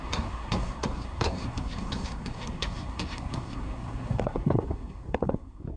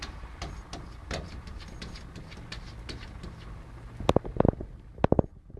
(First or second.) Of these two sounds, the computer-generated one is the first